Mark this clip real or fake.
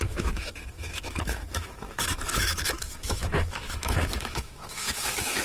fake